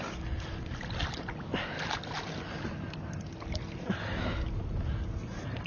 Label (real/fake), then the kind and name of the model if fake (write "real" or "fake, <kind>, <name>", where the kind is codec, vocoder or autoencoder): real